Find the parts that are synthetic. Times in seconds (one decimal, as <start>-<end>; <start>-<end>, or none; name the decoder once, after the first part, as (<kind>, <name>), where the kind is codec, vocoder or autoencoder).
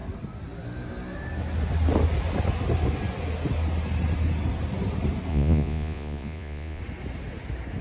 5.3-6.8 (vocoder, Vocos)